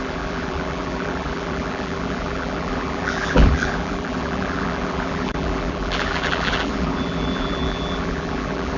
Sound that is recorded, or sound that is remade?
remade